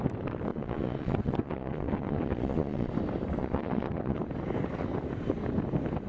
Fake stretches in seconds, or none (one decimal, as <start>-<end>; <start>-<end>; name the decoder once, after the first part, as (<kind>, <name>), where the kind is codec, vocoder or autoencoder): 0.5-2.9 (vocoder, Vocos); 3.4-4.2